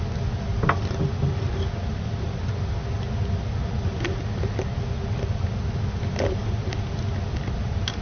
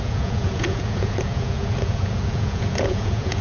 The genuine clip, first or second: first